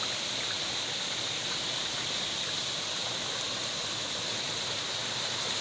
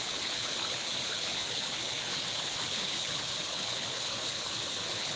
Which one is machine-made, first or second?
second